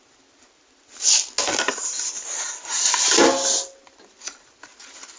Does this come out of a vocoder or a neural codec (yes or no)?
no